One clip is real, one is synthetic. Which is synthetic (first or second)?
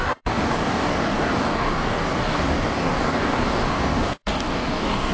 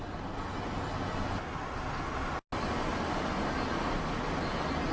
first